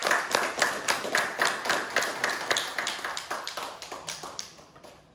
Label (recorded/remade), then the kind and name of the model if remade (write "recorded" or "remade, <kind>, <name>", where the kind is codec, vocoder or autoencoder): recorded